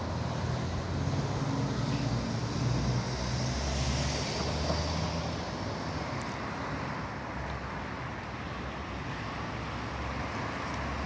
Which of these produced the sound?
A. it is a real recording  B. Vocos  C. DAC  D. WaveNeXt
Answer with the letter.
A